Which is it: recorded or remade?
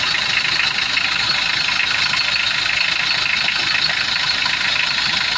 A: recorded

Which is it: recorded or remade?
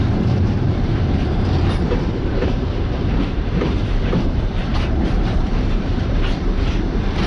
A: remade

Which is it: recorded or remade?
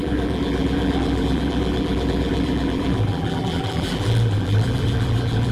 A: remade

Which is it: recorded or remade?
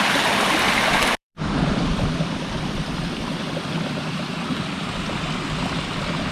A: remade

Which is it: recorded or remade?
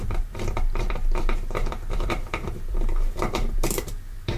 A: remade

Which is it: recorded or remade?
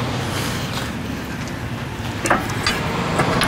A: recorded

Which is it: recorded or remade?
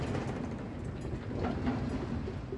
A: recorded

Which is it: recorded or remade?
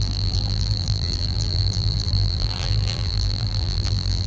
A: remade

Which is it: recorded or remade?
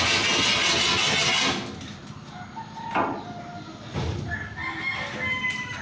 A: recorded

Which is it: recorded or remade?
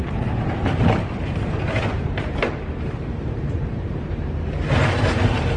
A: remade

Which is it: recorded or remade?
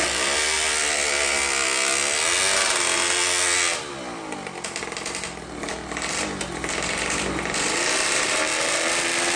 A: recorded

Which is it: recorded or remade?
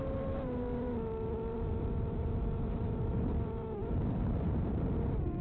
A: remade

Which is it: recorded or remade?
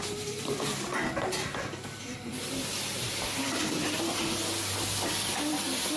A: remade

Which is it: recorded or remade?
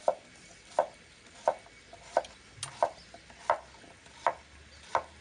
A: recorded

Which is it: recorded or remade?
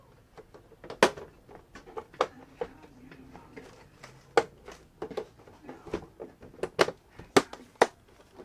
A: recorded